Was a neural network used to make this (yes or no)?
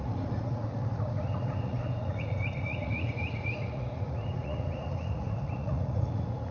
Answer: yes